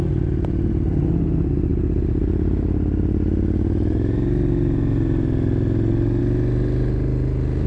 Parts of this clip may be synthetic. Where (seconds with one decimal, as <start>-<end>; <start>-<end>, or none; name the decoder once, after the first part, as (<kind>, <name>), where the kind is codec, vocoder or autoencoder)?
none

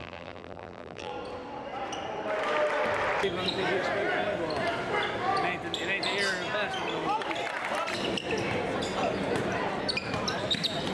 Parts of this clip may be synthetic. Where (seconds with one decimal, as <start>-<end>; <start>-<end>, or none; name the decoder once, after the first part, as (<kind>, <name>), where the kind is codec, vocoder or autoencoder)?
0.0-1.1 (vocoder, BigVGAN v2)

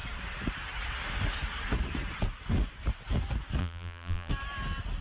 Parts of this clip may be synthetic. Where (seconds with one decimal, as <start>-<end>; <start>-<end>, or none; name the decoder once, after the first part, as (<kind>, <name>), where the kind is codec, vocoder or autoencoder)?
3.6-4.3 (vocoder, BigVGAN v2)

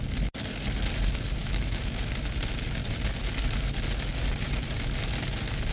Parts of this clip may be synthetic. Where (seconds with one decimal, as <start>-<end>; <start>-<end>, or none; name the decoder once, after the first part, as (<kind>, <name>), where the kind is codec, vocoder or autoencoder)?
1.4-2.0 (autoencoder, DAC-VAE)

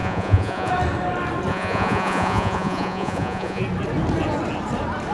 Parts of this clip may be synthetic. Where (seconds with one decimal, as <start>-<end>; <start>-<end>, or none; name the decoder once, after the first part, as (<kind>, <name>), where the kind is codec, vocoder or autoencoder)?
0.0-0.7 (vocoder, Vocos); 1.5-3.6

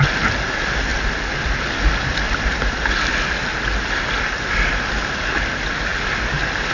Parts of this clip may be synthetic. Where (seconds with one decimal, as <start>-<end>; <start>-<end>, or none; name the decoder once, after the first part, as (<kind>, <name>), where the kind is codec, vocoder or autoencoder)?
none

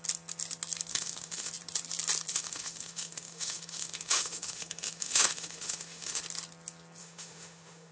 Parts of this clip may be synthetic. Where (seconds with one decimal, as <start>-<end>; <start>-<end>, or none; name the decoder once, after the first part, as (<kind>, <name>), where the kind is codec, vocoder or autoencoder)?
0.9-1.5 (autoencoder, DAC-VAE); 2.3-6.2; 7.0-7.9